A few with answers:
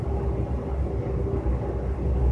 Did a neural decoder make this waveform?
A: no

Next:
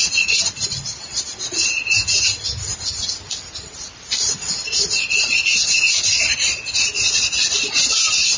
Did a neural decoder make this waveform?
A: no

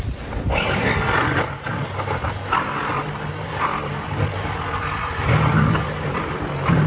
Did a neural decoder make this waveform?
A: no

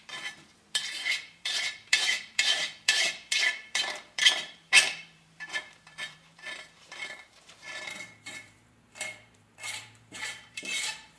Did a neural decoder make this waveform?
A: yes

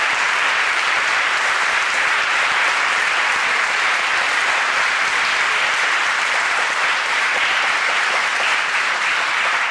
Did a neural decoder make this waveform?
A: yes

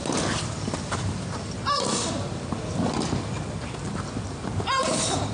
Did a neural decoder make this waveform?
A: no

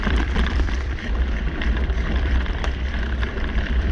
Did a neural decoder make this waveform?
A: yes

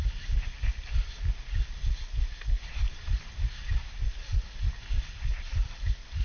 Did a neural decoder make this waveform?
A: no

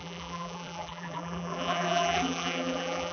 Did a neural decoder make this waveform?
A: yes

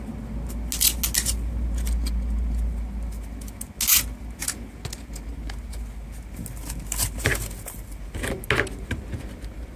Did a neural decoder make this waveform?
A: no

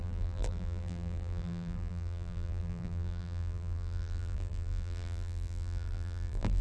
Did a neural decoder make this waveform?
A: yes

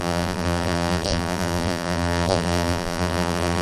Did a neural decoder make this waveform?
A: yes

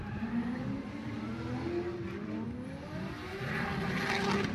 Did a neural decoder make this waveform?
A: no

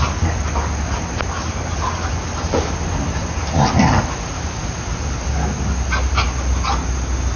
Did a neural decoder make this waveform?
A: no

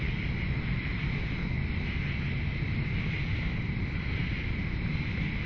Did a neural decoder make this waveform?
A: no